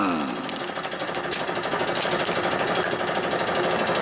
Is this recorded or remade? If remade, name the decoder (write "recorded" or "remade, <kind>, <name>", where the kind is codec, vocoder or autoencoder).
recorded